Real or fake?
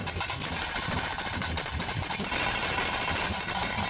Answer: real